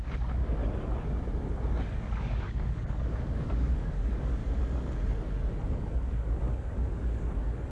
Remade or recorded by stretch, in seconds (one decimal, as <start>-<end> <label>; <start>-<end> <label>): 0.0-0.6 remade; 0.6-1.8 recorded; 1.8-4.4 remade; 4.4-5.7 recorded; 5.7-7.7 remade